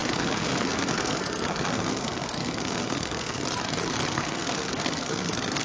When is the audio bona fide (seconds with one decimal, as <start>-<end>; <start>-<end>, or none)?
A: 3.4-4.1